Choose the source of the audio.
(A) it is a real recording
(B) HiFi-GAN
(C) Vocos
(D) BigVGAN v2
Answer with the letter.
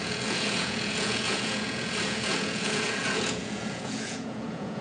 C